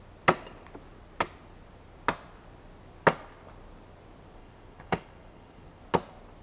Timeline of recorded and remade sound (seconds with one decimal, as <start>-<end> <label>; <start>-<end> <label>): 0.0-4.4 recorded; 4.4-5.8 remade; 5.8-6.4 recorded